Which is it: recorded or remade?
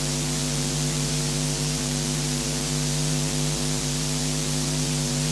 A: remade